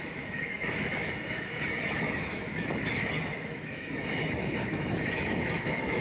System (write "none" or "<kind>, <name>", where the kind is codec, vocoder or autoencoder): autoencoder, DAC-VAE